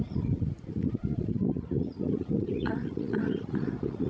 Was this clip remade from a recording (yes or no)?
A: yes